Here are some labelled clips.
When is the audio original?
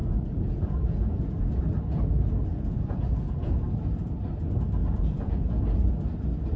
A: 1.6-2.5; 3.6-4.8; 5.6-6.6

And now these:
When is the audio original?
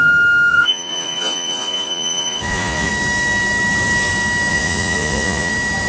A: 0.0-0.5; 2.9-4.5; 5.5-5.9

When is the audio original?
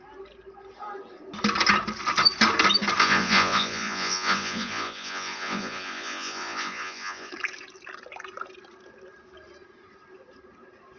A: 0.0-3.0; 7.3-11.0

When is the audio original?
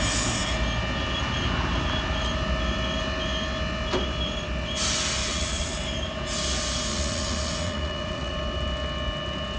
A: 0.0-5.2; 5.8-6.9; 8.3-9.6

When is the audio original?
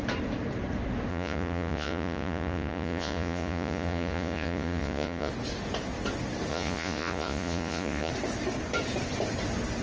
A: 0.0-1.1; 5.3-6.5; 8.1-9.8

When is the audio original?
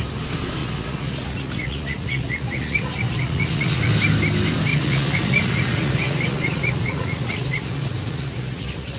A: 0.0-0.6; 3.9-4.7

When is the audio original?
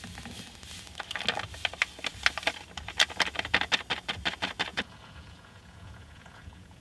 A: 0.0-4.7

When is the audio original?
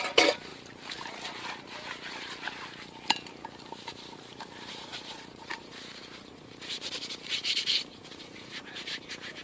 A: 0.5-4.7